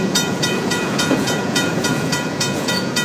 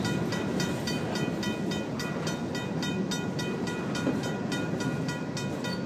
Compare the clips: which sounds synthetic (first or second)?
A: first